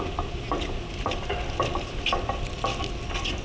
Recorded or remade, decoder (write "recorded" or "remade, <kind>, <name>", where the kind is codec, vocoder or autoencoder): recorded